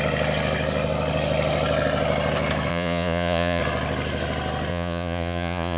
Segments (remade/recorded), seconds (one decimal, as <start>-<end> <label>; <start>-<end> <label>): 0.0-2.7 recorded; 2.7-3.6 remade; 3.6-4.7 recorded; 4.7-5.8 remade